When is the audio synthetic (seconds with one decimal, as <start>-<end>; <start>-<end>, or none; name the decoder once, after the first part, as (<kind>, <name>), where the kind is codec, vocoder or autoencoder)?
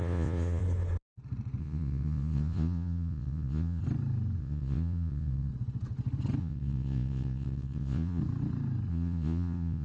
0.0-0.6 (vocoder, Vocos); 1.6-3.8; 4.4-5.5; 6.4-8.2; 8.9-9.8